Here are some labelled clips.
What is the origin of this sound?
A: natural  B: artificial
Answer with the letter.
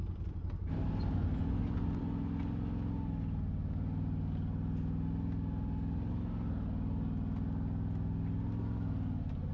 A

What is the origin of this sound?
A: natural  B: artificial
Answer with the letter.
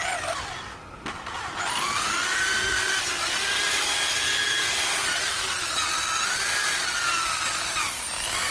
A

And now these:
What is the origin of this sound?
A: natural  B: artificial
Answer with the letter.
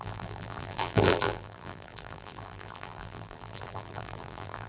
B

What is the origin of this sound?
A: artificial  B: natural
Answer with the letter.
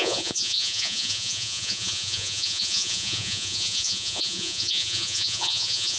A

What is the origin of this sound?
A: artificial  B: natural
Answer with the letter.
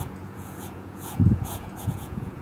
A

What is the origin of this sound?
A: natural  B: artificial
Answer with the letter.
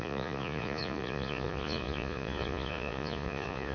B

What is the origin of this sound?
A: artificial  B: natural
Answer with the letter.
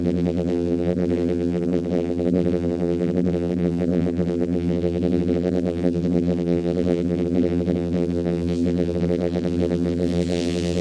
A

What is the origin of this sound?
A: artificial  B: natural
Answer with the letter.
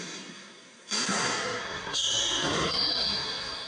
A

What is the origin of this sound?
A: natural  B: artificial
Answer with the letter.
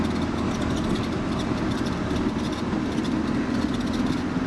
A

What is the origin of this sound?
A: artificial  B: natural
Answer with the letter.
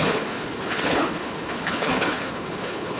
A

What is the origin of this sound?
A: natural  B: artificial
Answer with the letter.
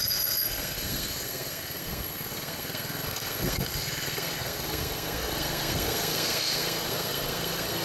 B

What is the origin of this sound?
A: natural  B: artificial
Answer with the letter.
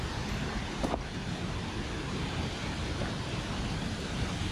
A